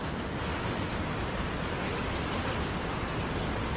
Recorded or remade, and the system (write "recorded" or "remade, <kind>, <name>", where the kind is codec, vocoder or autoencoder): recorded